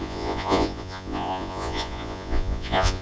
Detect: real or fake fake